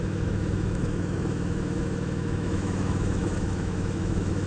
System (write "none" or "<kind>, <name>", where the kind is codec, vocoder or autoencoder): autoencoder, DAC-VAE